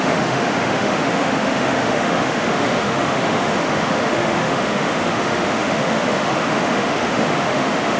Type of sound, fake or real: fake